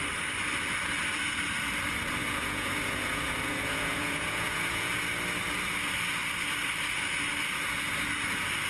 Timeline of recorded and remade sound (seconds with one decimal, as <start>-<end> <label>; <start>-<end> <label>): 0.0-2.2 recorded; 2.2-5.0 remade; 5.0-8.7 recorded